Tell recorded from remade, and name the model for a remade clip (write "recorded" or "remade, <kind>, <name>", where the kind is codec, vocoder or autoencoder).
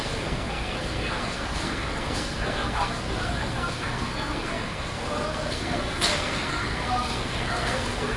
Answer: remade, codec, SNAC